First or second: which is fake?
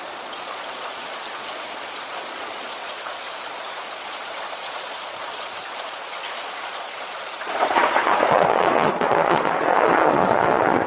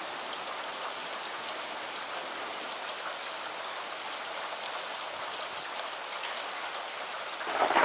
first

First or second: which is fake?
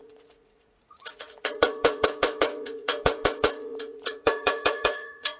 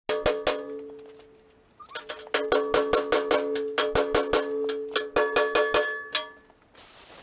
first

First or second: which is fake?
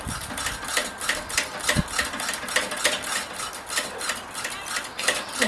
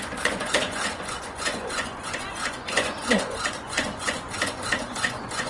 second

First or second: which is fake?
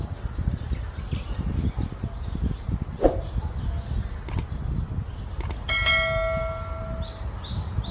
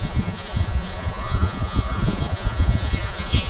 second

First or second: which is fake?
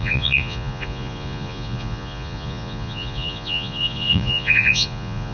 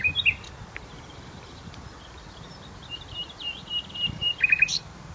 first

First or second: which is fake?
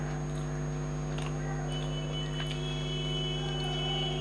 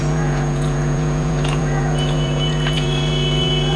second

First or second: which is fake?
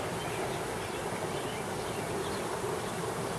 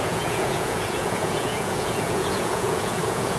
second